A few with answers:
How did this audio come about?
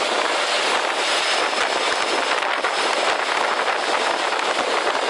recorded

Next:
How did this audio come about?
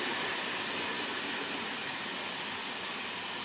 recorded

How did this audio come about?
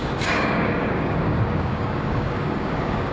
remade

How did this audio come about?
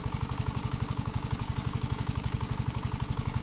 remade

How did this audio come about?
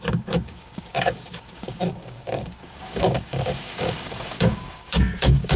remade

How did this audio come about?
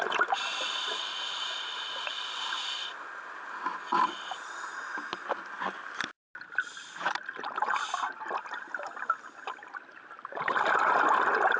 recorded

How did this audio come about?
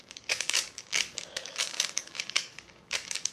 remade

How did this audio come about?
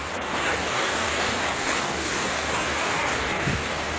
remade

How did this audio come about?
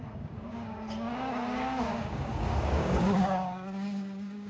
remade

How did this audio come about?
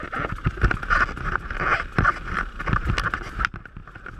recorded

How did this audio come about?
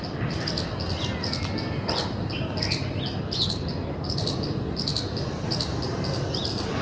recorded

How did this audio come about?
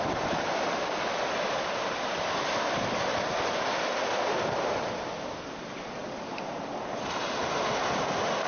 recorded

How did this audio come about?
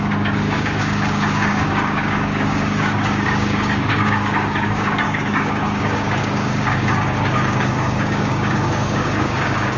remade